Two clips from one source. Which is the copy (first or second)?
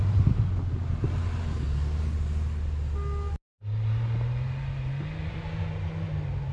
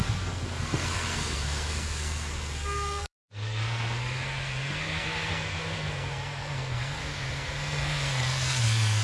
second